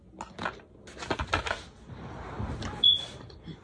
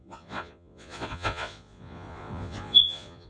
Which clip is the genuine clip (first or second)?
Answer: first